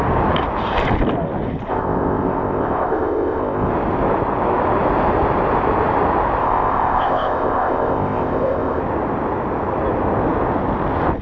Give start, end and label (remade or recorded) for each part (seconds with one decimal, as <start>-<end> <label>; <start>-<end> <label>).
0.0-1.7 recorded; 1.7-3.7 remade; 3.7-6.4 recorded; 6.4-8.8 remade; 8.8-11.2 recorded